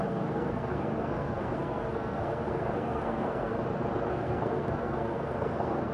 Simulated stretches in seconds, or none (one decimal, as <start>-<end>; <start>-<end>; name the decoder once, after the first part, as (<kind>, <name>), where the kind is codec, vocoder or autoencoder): 0.0-3.5 (codec, SNAC); 4.1-5.9

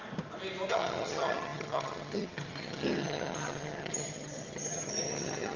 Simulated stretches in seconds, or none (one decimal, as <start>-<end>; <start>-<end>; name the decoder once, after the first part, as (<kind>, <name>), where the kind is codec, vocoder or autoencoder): 0.7-5.6 (vocoder, HiFi-GAN)

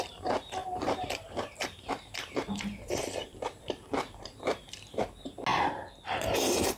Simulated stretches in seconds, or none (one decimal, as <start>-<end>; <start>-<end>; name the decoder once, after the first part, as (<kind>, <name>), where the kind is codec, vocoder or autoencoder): 0.6-4.7 (vocoder, BigVGAN v2)

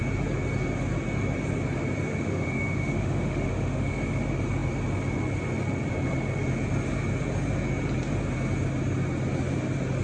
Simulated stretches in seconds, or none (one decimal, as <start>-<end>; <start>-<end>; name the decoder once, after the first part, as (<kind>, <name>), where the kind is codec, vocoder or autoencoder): 2.1-3.9 (autoencoder, DAC-VAE)

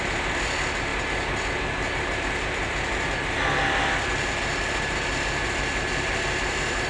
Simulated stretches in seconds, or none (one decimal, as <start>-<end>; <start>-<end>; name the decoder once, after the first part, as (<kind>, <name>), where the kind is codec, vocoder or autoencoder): none

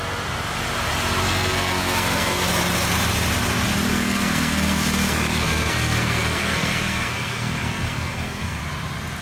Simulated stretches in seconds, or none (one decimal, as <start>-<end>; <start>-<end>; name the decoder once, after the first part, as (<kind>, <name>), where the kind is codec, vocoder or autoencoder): 1.2-2.4 (codec, SNAC); 3.9-8.6

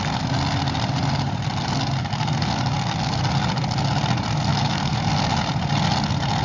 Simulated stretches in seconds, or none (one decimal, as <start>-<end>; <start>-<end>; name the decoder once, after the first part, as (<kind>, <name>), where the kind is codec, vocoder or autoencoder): 2.0-3.2 (codec, DAC); 4.5-5.1